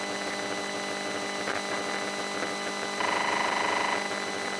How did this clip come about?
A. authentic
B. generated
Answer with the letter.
A